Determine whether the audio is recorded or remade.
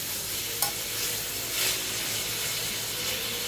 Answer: recorded